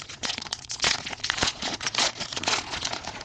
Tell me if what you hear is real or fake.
fake